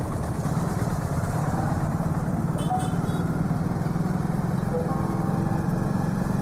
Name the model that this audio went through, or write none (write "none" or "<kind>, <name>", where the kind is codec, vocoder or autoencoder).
none